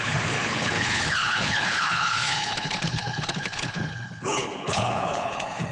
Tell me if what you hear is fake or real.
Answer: fake